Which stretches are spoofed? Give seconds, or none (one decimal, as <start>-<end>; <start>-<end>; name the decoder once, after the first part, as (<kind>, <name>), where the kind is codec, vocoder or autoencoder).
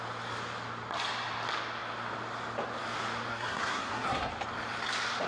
3.3-4.3 (codec, SNAC)